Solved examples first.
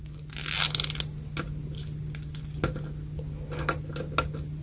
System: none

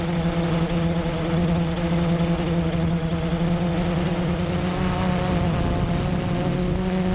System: none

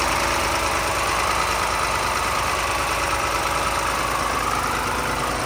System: none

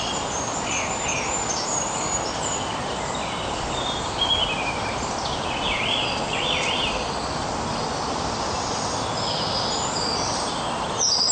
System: none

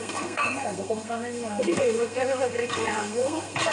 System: codec, SNAC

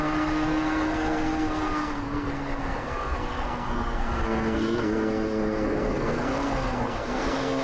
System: codec, SNAC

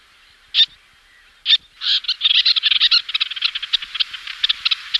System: none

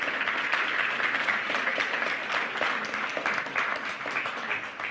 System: none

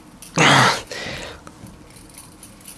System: none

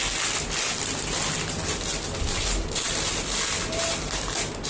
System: none